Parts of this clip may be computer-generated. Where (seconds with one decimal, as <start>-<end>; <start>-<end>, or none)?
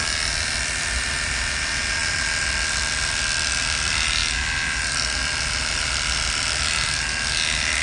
0.0-4.2; 5.1-7.8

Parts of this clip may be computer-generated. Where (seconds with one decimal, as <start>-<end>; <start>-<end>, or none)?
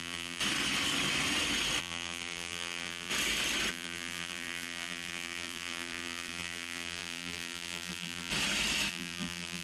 0.0-0.4; 1.8-3.1; 3.7-8.3; 8.9-9.6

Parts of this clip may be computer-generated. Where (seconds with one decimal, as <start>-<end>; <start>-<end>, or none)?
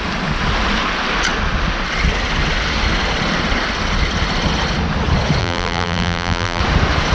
5.4-6.6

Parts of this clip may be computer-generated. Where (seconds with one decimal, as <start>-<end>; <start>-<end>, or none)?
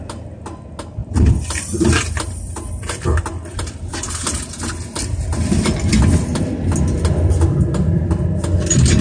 1.0-3.9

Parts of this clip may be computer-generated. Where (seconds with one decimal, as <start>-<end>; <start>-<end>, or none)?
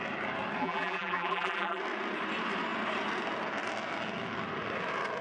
0.6-1.8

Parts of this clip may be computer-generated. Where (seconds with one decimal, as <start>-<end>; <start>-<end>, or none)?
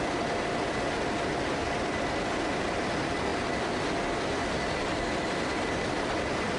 none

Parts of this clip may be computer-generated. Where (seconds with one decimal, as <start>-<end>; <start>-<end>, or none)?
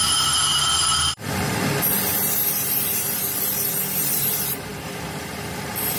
0.0-6.0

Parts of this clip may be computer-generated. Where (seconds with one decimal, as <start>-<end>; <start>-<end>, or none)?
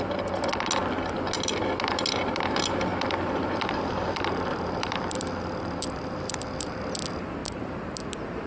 2.9-6.8